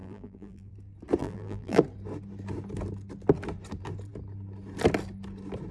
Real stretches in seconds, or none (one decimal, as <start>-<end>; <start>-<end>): 0.7-1.2; 1.8-5.7

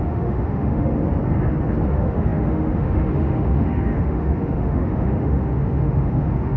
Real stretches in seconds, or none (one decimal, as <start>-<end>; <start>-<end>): 0.9-1.9

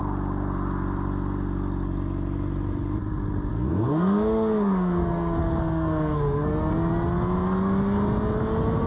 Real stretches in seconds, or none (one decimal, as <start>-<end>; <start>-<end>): 0.0-3.5; 6.7-8.9

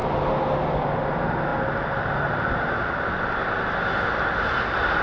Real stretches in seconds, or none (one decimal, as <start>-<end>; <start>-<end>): 0.0-5.0